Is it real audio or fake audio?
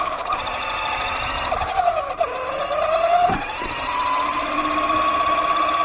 real